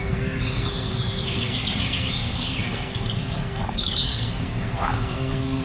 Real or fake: fake